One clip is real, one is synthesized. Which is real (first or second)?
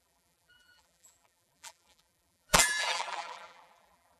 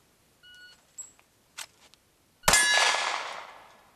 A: second